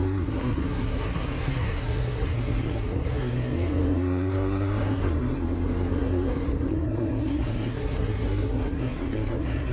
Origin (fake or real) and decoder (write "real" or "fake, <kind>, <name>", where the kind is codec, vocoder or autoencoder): fake, codec, SNAC